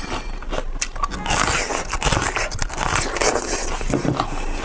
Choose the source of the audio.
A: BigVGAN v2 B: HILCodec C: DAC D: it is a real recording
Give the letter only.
D